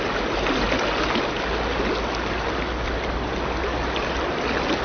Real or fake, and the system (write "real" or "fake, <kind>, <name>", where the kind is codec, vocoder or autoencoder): real